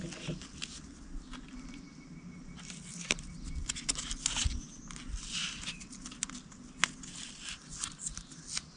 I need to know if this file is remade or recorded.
recorded